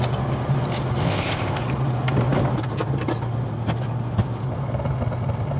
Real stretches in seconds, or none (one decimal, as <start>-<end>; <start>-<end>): 0.0-1.0; 1.6-5.6